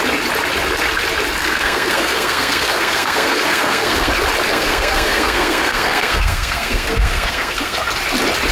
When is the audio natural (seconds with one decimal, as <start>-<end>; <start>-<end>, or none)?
0.0-1.4; 4.1-4.5; 7.9-8.5